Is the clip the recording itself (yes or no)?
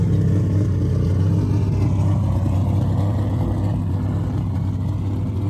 yes